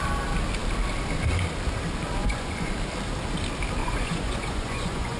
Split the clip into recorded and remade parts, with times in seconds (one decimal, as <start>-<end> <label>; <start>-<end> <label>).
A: 0.0-2.2 recorded; 2.2-2.7 remade; 2.7-3.8 recorded; 3.8-5.2 remade